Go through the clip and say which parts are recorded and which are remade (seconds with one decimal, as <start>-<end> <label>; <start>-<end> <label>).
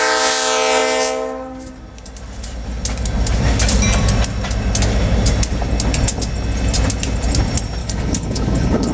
0.0-7.8 recorded; 7.8-8.9 remade